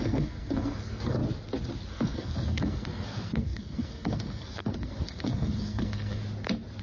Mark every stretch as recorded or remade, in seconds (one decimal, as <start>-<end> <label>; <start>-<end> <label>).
0.0-1.2 remade; 1.2-1.9 recorded; 1.9-6.2 remade; 6.2-6.8 recorded